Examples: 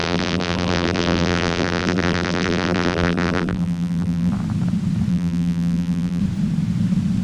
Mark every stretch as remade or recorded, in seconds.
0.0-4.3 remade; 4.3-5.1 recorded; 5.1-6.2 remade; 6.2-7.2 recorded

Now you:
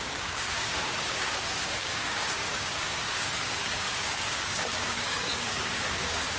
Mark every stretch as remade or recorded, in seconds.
0.0-6.4 remade

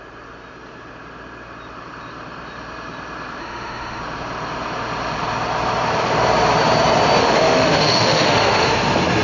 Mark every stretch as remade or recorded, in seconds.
0.0-3.4 recorded; 3.4-4.0 remade; 4.0-7.2 recorded; 7.2-8.7 remade; 8.7-9.2 recorded

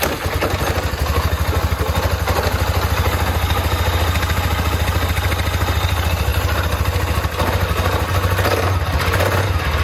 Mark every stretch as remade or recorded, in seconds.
0.0-9.8 recorded

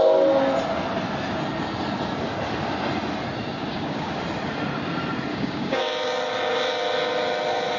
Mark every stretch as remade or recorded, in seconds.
0.0-3.6 recorded; 3.6-4.2 remade; 4.2-5.3 recorded; 5.3-5.8 remade; 5.8-7.8 recorded

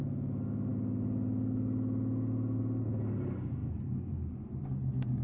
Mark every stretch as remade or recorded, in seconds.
0.0-3.6 recorded; 3.6-4.6 remade; 4.6-5.2 recorded

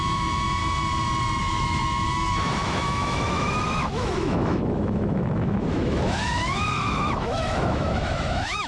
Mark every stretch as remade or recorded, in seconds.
0.0-0.6 remade; 0.6-1.4 recorded; 1.4-8.7 remade